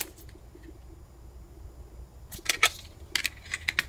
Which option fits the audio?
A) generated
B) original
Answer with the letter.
B